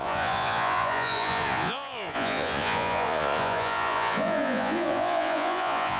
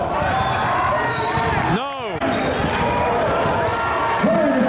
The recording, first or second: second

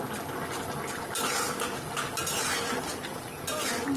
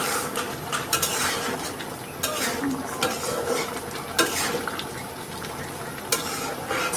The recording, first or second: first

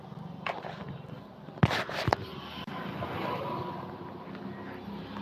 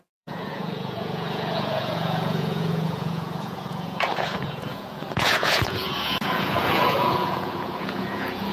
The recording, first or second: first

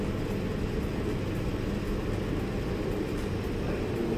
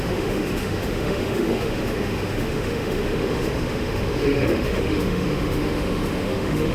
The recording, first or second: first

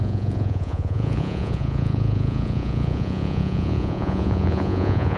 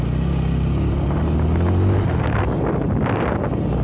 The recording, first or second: second